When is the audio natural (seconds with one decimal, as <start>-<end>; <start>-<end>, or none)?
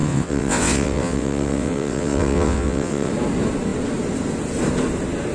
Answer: 3.1-5.3